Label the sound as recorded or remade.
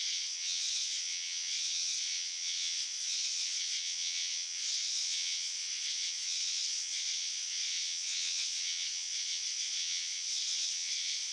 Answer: remade